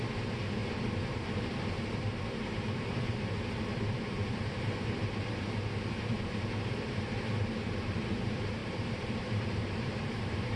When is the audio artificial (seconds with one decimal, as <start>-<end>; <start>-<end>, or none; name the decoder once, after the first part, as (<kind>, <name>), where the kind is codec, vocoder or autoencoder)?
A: 0.0-10.6 (vocoder, BigVGAN v2)